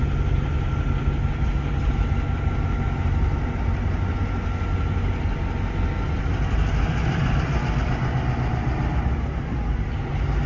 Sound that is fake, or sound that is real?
real